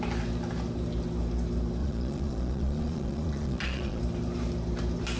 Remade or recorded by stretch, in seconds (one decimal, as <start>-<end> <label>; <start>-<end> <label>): 0.0-1.8 recorded; 1.8-4.0 remade; 4.0-5.2 recorded

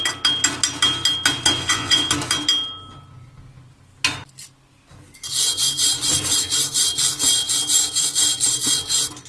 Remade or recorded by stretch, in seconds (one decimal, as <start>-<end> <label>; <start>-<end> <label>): 0.0-1.6 recorded; 1.6-2.1 remade; 2.1-9.3 recorded